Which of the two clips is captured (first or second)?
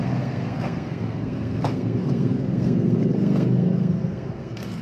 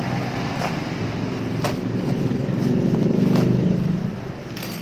second